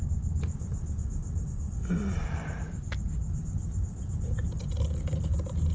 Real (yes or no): yes